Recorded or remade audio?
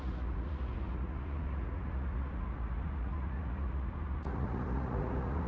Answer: remade